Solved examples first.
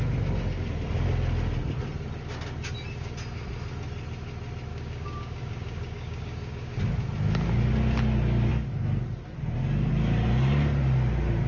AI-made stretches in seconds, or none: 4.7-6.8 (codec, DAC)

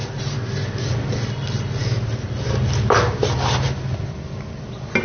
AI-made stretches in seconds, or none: none

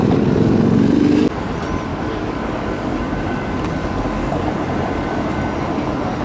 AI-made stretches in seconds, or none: 1.9-3.0 (codec, DAC); 3.8-4.5